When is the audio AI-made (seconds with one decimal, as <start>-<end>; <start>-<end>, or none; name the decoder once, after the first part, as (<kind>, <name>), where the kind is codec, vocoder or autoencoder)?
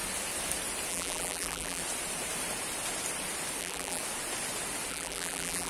0.9-1.8 (vocoder, BigVGAN v2); 3.6-4.0; 4.9-5.7